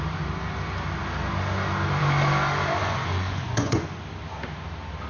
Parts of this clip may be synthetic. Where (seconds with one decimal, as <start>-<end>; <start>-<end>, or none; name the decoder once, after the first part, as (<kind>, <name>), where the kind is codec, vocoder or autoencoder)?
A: 2.8-4.0 (vocoder, Vocos)